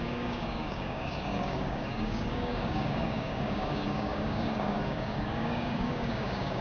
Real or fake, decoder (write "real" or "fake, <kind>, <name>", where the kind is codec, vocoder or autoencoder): fake, codec, DAC